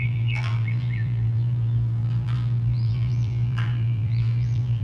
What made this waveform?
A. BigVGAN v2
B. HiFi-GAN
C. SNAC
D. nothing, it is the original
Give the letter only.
A